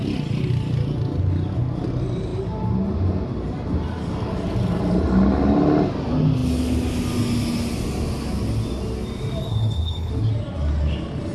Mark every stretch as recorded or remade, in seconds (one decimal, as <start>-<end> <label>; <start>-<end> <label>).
0.0-9.5 recorded; 9.5-10.1 remade; 10.1-11.3 recorded